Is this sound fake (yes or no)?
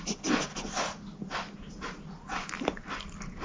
no